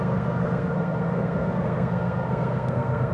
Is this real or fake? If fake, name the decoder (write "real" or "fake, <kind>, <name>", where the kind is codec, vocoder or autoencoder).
fake, codec, SNAC